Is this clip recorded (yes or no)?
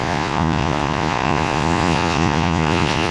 no